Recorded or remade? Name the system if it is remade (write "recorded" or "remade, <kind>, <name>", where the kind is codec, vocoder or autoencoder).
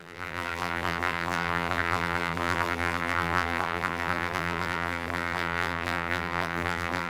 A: remade, vocoder, BigVGAN v2